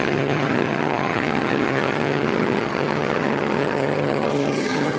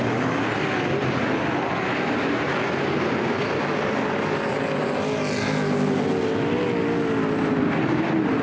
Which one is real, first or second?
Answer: second